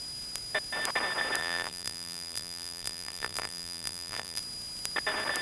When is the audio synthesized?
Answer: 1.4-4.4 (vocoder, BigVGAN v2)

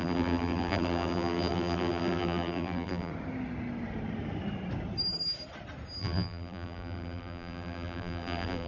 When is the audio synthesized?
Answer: 0.0-3.1 (vocoder, BigVGAN v2); 6.0-8.7

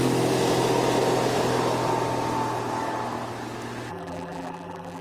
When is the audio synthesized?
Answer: 3.9-5.0 (vocoder, BigVGAN v2)

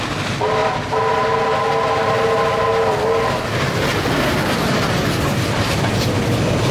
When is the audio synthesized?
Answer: none

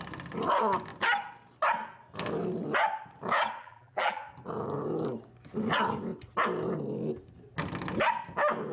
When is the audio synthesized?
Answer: 3.6-4.2 (vocoder, BigVGAN v2)

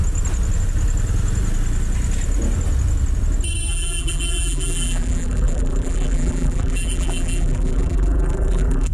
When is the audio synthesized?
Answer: 3.7-8.9 (vocoder, BigVGAN v2)

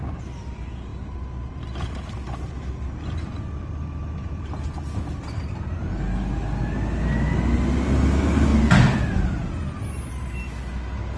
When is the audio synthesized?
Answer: 0.9-4.4 (vocoder, BigVGAN v2); 8.5-9.1

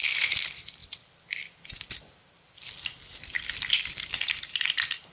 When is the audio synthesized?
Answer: 0.8-3.9 (vocoder, BigVGAN v2)